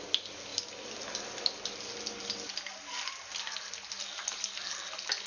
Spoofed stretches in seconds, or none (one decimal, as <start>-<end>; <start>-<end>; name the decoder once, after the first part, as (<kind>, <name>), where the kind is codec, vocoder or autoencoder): none